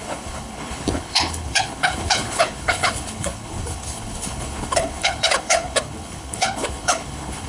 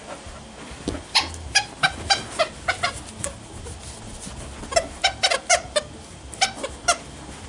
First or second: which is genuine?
second